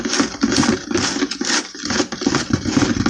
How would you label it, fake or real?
real